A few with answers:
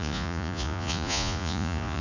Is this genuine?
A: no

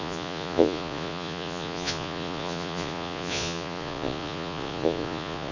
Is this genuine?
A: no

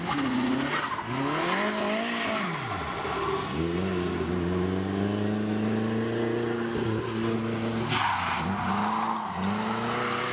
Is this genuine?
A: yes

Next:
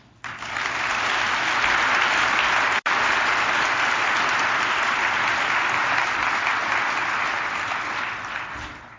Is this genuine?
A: yes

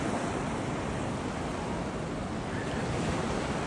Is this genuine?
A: yes